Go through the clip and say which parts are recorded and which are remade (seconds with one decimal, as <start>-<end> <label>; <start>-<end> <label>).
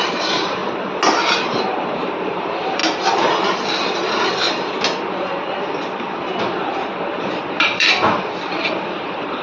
0.0-0.6 remade; 0.6-1.3 recorded; 1.3-2.8 remade; 2.8-6.6 recorded; 6.6-9.4 remade